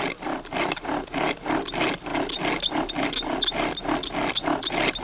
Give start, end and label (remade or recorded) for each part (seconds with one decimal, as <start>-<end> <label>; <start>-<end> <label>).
0.0-5.0 recorded